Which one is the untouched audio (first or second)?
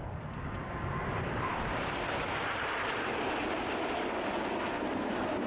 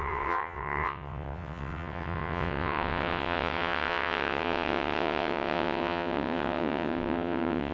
first